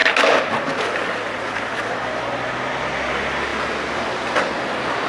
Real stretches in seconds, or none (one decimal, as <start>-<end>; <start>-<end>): 0.0-5.1